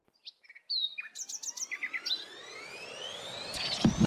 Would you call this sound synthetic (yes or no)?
no